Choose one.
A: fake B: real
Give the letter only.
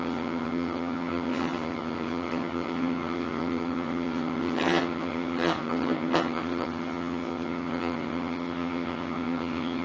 A